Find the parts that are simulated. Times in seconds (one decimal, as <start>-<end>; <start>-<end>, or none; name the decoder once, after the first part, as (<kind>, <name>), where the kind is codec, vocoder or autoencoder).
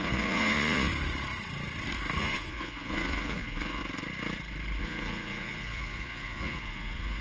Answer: 0.0-0.9 (vocoder, Vocos); 2.2-3.8; 4.8-7.2